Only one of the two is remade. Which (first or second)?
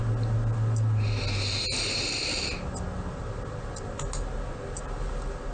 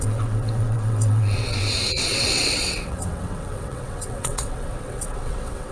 second